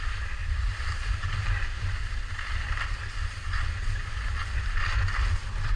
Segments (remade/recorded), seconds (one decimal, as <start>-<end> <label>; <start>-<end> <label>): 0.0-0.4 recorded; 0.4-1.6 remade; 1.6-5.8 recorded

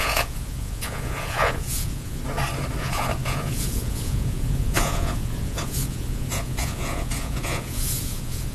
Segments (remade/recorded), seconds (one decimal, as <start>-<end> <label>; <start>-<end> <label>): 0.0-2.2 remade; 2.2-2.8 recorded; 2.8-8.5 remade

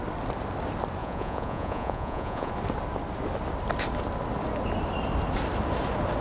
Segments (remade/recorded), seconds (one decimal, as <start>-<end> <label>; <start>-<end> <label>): 0.0-1.0 recorded; 1.0-2.5 remade; 2.5-6.2 recorded

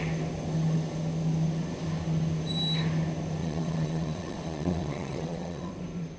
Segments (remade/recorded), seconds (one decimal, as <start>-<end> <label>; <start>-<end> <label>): 0.0-3.4 recorded; 3.4-5.7 remade; 5.7-6.2 recorded

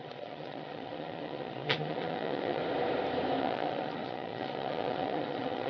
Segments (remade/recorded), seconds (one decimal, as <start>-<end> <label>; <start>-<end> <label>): 0.0-2.6 remade; 2.6-3.4 recorded; 3.4-5.7 remade

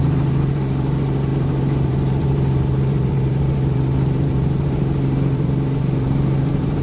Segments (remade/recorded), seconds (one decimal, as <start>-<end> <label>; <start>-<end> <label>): 0.0-6.8 remade

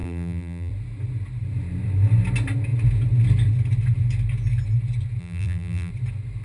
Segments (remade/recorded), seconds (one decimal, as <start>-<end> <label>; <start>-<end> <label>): 0.0-0.7 remade; 0.7-5.2 recorded; 5.2-5.9 remade; 5.9-6.4 recorded

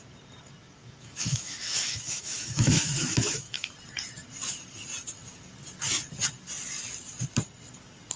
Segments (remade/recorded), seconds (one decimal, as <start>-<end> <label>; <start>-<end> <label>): 0.0-0.6 recorded; 0.6-3.7 remade; 3.7-8.2 recorded